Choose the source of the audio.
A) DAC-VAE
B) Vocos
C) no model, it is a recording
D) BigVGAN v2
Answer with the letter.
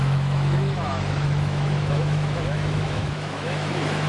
A